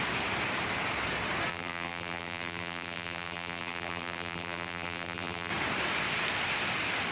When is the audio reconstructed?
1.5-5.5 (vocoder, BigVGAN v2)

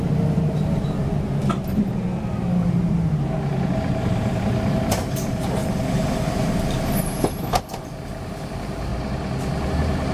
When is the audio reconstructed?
0.0-1.4 (vocoder, BigVGAN v2); 4.2-8.9; 9.7-10.1